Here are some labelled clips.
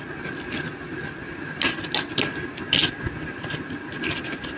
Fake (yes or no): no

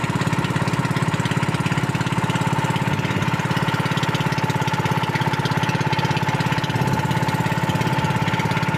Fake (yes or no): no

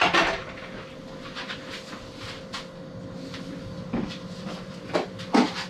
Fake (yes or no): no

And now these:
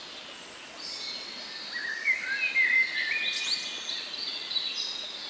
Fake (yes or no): no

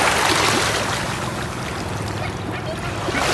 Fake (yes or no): no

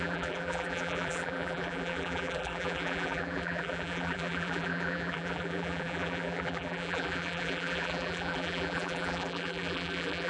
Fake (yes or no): yes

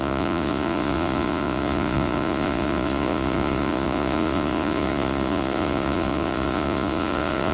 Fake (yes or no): yes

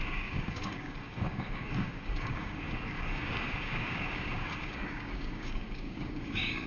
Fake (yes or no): yes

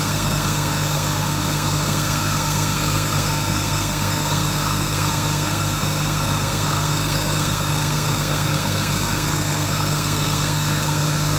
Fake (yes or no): yes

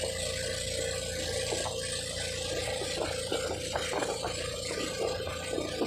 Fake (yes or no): no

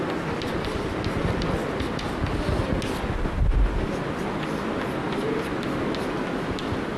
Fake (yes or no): no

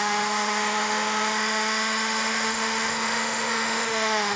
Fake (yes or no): yes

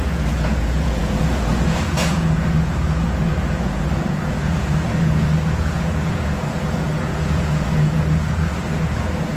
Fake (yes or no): yes